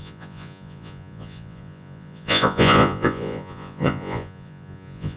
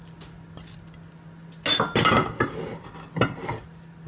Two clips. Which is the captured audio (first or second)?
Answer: second